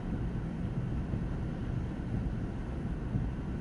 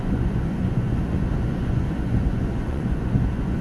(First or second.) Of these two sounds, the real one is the first